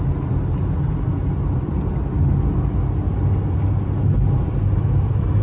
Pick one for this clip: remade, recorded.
recorded